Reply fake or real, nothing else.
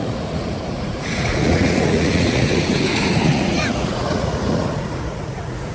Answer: fake